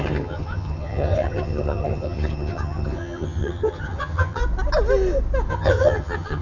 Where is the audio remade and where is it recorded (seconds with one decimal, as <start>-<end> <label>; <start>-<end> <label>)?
0.0-4.4 remade; 4.4-5.5 recorded; 5.5-6.4 remade